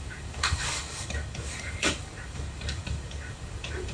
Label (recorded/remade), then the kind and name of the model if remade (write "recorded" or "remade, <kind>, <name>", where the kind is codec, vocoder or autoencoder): remade, codec, DAC